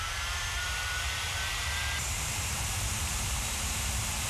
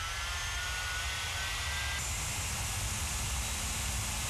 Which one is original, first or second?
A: second